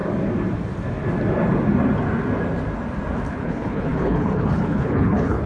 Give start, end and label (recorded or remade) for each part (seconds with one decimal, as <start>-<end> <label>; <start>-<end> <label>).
0.0-3.3 recorded; 3.3-5.5 remade